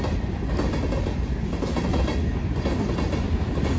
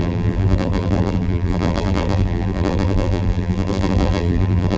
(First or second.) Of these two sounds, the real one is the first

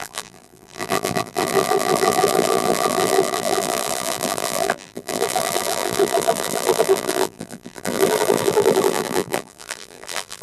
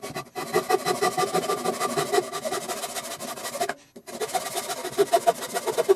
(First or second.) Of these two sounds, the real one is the second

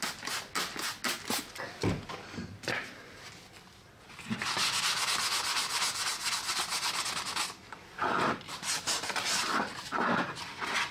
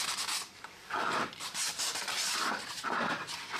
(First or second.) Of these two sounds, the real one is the first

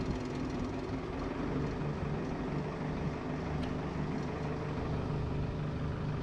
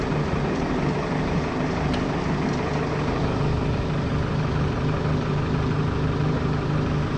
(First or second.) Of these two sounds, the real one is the first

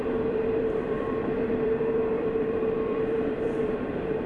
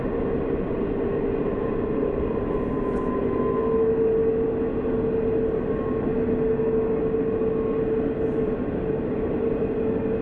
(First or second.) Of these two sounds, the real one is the second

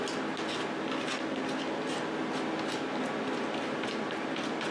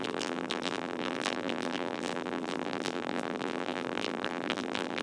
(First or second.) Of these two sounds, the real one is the first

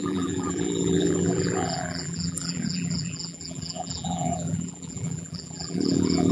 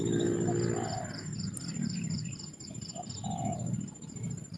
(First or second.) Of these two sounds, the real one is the second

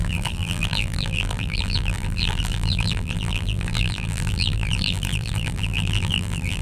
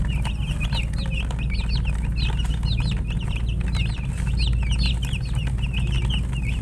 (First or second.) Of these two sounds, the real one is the second